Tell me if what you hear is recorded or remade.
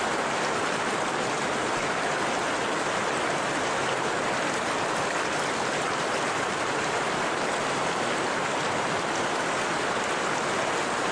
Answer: recorded